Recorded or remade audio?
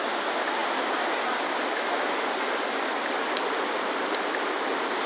recorded